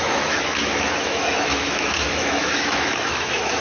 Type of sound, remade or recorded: remade